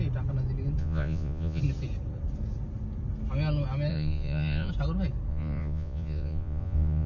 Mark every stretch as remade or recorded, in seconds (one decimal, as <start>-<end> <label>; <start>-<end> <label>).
0.0-0.8 recorded; 0.8-1.6 remade; 1.6-3.9 recorded; 3.9-4.7 remade; 4.7-5.3 recorded; 5.3-7.1 remade

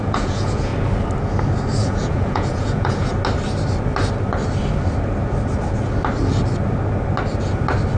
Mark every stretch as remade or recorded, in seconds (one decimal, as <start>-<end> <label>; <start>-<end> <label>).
0.0-0.7 remade; 0.7-1.8 recorded; 1.8-3.1 remade; 3.1-8.0 recorded

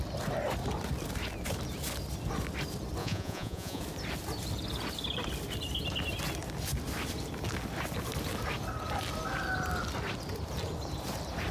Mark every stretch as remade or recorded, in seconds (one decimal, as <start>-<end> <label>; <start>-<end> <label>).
0.0-3.0 recorded; 3.0-3.8 remade; 3.8-11.5 recorded